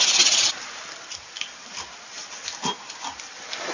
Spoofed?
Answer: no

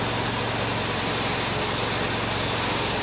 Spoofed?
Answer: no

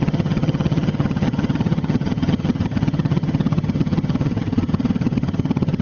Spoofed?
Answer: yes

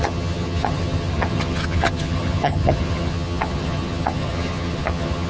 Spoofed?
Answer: yes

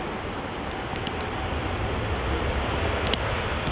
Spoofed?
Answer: no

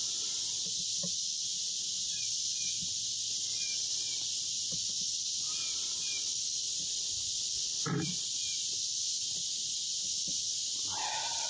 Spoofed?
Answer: no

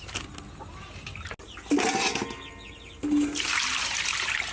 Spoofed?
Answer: no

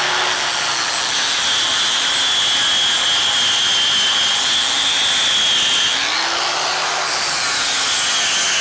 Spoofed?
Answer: no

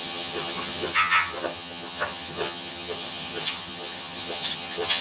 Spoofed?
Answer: yes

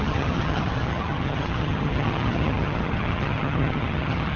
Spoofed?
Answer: yes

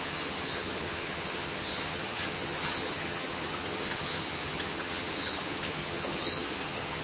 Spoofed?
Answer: yes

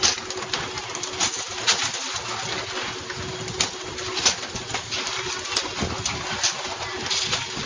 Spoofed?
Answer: no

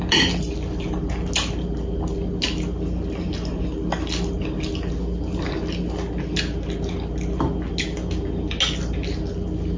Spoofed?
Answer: no